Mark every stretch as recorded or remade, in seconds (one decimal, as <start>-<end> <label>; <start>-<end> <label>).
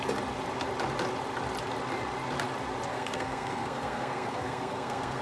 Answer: 0.0-2.9 recorded; 2.9-5.2 remade